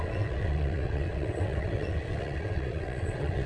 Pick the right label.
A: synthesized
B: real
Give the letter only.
A